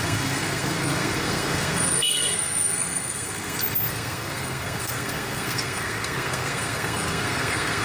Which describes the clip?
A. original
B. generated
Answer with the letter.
B